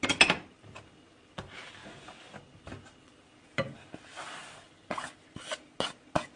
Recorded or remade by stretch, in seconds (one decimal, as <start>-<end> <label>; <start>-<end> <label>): 0.0-6.4 recorded